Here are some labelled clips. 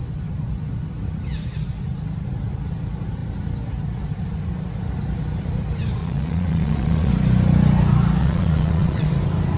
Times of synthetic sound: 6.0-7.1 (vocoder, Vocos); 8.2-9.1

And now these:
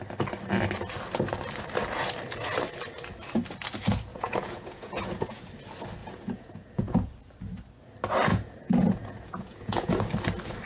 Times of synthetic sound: 4.1-5.5 (vocoder, Vocos); 6.0-7.1; 8.3-10.0

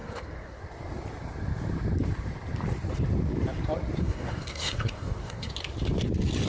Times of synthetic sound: 0.0-0.6 (codec, SNAC); 4.0-5.5

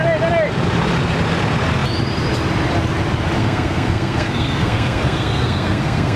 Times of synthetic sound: 3.4-6.2 (codec, SNAC)

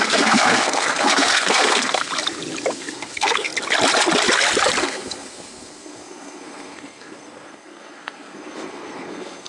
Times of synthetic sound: 0.0-2.1 (codec, SNAC); 2.7-3.5; 4.8-9.5

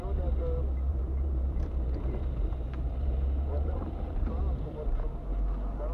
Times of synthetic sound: 0.9-4.4 (vocoder, BigVGAN v2)

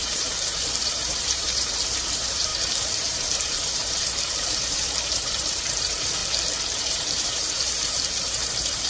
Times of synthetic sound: 0.0-6.2 (vocoder, BigVGAN v2); 6.8-8.9

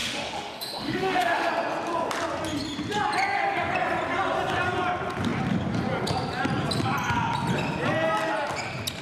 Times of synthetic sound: 0.0-1.5 (autoencoder, DAC-VAE)